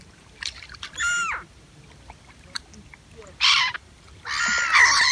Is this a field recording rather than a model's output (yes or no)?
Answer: no